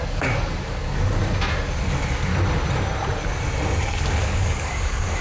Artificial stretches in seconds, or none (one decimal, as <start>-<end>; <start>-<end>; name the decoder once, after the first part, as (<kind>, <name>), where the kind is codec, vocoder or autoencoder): 0.0-1.2 (codec, DAC); 1.8-2.3; 3.8-5.2